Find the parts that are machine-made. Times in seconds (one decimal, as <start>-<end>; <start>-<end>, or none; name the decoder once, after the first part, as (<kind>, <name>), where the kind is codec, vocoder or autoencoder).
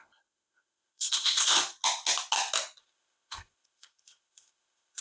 0.0-1.6 (codec, ZipCodec); 2.8-5.0